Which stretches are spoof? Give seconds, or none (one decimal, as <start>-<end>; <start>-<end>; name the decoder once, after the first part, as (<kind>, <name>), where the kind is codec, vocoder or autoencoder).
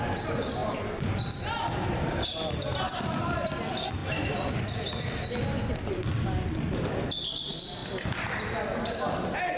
0.6-3.1 (vocoder, BigVGAN v2)